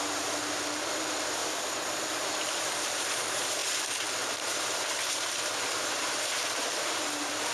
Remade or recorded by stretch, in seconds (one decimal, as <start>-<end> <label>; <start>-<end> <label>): 0.0-1.4 remade; 1.4-2.1 recorded; 2.1-7.5 remade